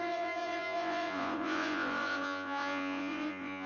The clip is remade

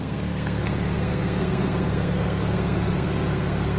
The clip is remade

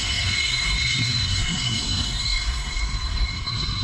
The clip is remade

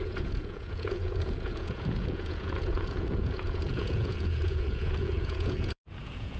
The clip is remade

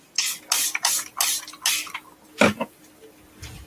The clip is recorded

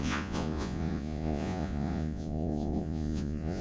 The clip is remade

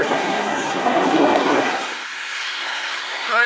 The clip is remade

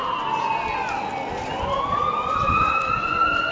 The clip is recorded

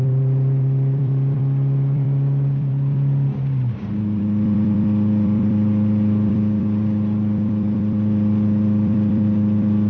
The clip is remade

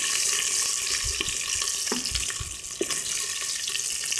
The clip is recorded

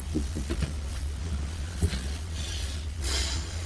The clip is remade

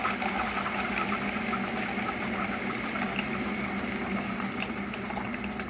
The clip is recorded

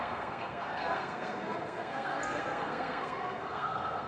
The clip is remade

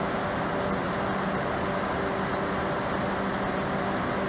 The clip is recorded